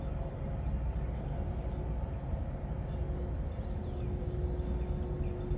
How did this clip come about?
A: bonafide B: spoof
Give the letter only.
A